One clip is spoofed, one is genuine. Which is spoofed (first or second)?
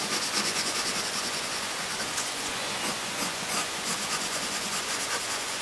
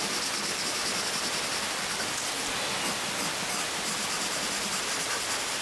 first